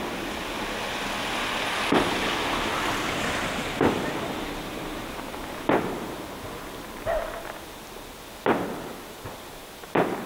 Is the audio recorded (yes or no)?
yes